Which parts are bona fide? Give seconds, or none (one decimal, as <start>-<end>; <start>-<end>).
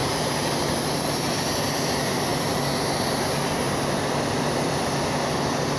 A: 0.0-5.8